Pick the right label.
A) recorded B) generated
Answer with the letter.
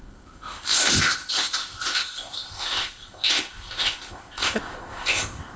B